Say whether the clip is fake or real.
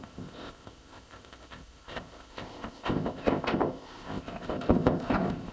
fake